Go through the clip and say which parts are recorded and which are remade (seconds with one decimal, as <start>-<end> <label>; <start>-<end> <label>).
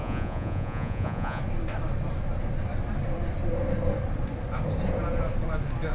0.0-1.4 remade; 1.4-5.9 recorded